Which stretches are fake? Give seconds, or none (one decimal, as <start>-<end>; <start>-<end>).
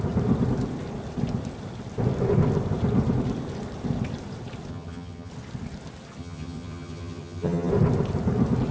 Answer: 4.7-5.3; 6.2-7.7